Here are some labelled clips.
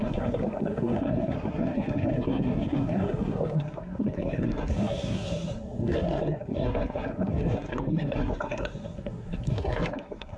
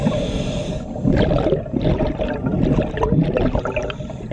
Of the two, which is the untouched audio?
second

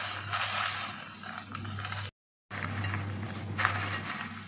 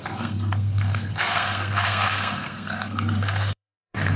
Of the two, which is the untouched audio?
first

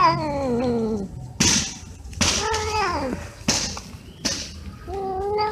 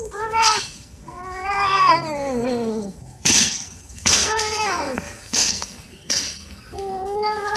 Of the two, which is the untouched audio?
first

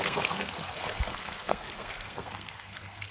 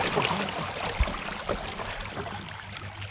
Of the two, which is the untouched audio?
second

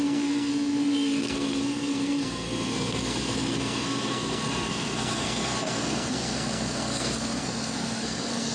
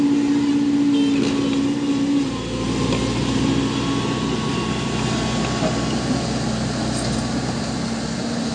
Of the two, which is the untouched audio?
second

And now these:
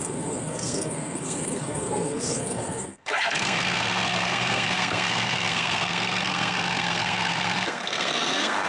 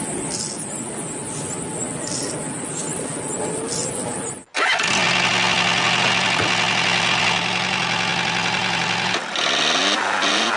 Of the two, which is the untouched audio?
second